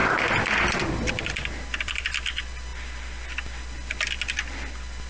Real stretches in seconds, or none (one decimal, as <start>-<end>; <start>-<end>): 0.0-5.1